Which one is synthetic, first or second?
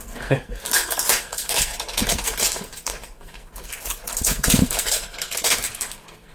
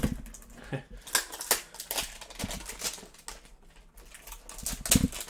first